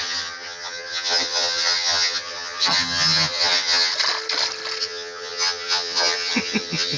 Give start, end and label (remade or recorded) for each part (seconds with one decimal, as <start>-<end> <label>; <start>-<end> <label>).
0.0-3.9 remade; 3.9-4.8 recorded; 4.8-7.0 remade